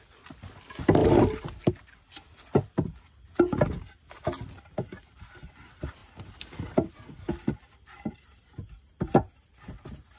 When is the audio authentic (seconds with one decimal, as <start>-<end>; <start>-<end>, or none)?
0.0-10.2